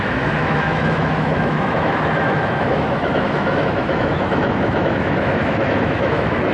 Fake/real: fake